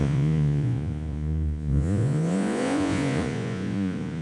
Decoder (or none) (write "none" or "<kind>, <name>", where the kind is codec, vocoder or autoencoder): vocoder, Vocos